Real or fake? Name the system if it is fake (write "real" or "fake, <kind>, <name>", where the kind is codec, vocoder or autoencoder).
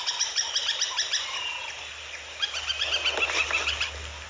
real